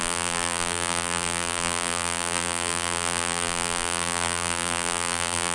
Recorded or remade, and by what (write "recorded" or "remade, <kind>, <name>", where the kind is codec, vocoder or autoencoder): remade, vocoder, BigVGAN v2